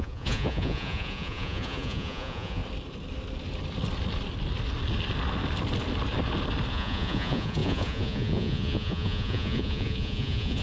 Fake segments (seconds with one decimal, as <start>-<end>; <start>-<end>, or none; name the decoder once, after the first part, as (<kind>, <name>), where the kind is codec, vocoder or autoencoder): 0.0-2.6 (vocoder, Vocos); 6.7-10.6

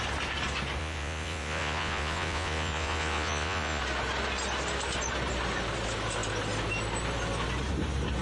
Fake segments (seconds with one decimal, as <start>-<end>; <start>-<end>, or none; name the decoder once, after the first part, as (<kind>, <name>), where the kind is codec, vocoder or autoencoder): 0.8-3.8 (vocoder, Vocos)

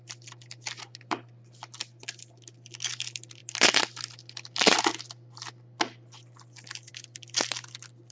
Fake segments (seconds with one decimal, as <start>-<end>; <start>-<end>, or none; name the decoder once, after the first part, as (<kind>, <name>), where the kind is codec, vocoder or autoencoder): none

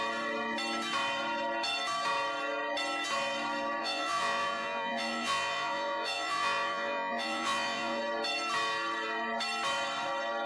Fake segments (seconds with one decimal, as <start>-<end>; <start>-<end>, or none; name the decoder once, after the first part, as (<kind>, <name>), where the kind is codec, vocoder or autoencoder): 3.8-8.0 (vocoder, Vocos)

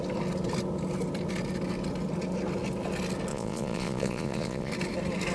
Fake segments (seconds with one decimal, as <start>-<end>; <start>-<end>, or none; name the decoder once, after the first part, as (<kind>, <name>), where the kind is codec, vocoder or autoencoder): 3.3-4.7 (vocoder, Vocos)

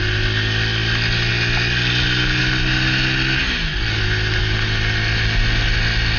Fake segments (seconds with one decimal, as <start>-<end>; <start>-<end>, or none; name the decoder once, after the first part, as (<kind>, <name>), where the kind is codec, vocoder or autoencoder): none